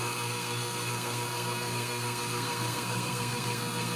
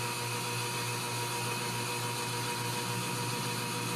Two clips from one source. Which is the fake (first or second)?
first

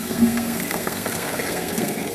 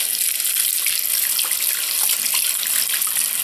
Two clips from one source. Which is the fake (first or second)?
first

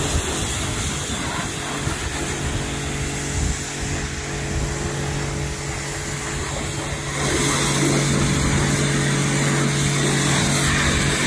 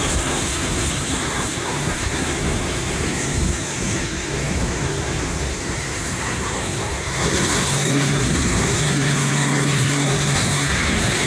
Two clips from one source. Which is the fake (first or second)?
second